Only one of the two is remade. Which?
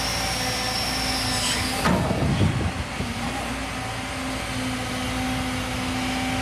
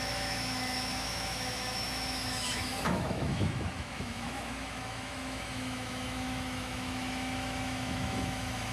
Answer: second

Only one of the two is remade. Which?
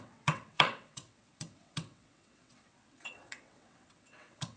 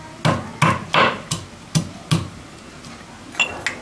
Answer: first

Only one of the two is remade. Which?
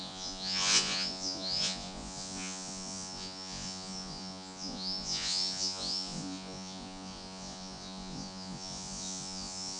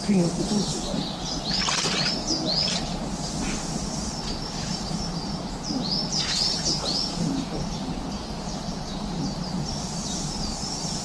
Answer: first